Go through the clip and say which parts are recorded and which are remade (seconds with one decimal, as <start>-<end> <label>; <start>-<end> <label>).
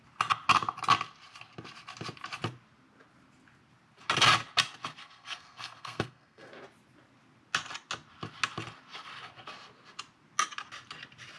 0.0-5.0 recorded; 5.0-6.5 remade; 6.5-11.4 recorded